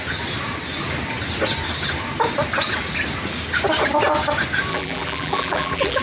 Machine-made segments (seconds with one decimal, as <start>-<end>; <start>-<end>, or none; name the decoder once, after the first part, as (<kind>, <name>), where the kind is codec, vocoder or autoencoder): 4.7-6.0 (vocoder, BigVGAN v2)

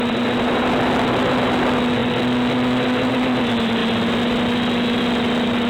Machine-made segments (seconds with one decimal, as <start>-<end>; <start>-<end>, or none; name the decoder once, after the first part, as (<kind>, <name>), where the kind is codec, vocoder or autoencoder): none